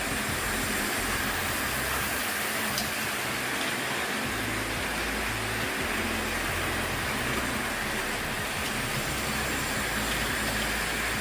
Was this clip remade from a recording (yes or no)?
no